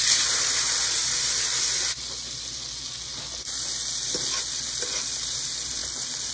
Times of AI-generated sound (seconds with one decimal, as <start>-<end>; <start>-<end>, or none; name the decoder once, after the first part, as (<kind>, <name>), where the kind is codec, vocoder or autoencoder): none